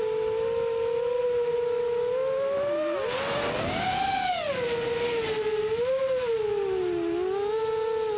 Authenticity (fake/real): real